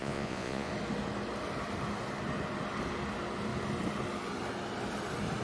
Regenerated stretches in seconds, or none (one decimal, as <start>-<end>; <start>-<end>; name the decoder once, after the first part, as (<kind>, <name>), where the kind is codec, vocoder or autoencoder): 0.0-0.7 (vocoder, Vocos)